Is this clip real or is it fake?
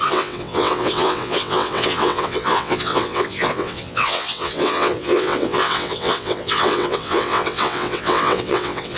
fake